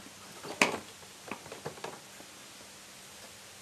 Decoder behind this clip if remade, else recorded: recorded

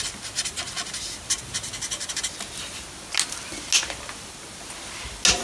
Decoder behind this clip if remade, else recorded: recorded